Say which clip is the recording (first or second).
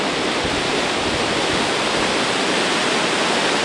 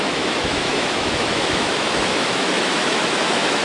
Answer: first